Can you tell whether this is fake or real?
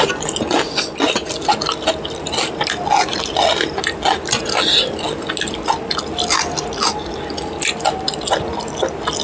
real